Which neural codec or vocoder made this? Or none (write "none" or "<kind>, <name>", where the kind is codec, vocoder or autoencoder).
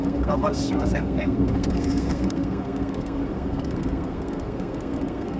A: codec, SNAC